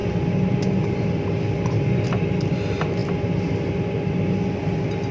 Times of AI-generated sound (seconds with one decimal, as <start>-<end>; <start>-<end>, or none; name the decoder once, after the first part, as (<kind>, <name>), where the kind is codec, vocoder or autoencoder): none